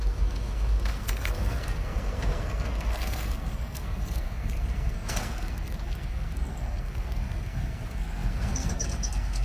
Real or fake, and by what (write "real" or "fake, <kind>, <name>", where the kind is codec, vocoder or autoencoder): fake, codec, SNAC